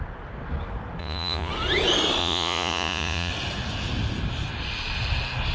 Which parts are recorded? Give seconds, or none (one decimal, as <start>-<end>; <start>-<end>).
0.0-1.0; 1.5-2.2; 3.3-5.5